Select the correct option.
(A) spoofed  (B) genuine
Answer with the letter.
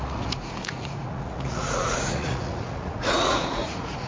A